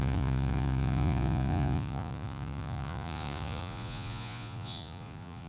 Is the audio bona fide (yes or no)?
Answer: no